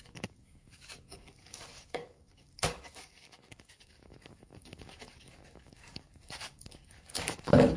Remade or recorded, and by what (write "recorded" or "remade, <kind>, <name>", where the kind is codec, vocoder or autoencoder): remade, codec, DAC